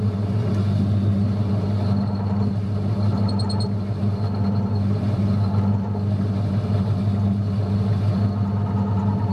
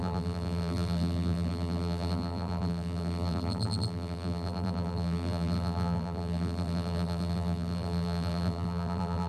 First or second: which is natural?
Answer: first